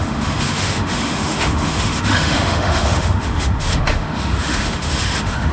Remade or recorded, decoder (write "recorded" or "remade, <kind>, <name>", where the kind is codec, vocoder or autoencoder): remade, autoencoder, DAC-VAE